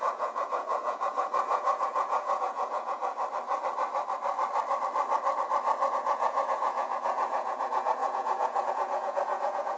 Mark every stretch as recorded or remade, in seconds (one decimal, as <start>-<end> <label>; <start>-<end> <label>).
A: 0.0-3.0 remade; 3.0-5.9 recorded; 5.9-9.8 remade